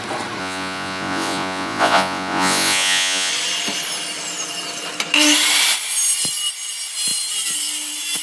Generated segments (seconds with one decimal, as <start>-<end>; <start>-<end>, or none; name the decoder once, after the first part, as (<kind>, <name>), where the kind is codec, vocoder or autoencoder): 0.4-3.3 (vocoder, Vocos)